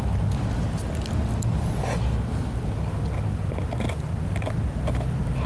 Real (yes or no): yes